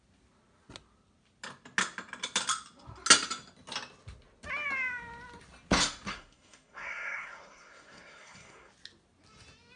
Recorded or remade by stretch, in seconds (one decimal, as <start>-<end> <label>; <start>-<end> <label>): 0.0-6.1 recorded; 6.1-8.7 remade; 8.7-9.8 recorded